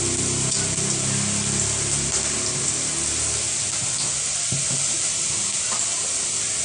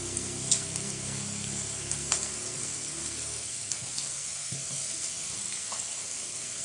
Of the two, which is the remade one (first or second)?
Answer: second